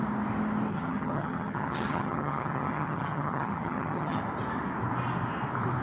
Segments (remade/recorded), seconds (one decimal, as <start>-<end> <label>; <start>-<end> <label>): 0.0-0.7 recorded; 0.7-4.2 remade; 4.2-5.8 recorded